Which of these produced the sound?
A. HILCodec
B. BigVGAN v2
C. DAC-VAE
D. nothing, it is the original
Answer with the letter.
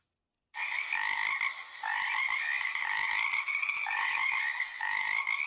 D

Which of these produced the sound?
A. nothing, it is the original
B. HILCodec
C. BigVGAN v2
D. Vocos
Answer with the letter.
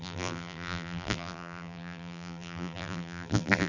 C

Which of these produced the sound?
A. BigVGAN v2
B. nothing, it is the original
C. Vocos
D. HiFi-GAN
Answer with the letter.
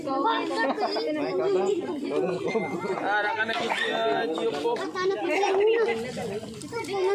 B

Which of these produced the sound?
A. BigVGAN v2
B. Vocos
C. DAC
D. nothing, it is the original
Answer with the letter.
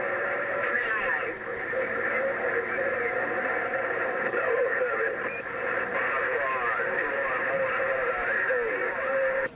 A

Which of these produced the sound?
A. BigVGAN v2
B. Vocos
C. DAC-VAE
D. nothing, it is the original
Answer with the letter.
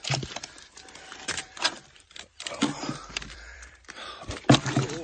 A